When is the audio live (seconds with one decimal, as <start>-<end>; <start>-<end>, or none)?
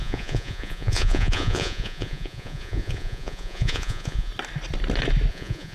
4.3-5.3